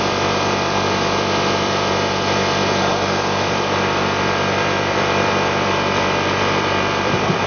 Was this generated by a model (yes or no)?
yes